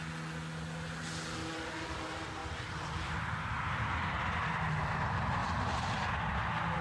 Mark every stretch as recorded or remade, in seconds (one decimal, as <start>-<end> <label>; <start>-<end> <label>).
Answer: 0.0-2.4 recorded; 2.4-4.3 remade; 4.3-5.4 recorded; 5.4-6.8 remade